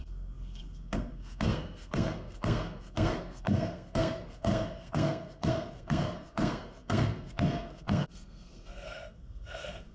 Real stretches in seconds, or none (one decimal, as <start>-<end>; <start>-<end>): none